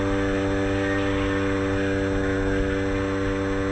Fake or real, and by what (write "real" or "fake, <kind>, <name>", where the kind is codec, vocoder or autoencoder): real